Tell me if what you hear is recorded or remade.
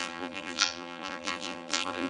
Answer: remade